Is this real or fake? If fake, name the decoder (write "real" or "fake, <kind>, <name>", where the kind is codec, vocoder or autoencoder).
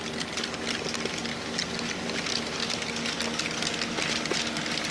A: real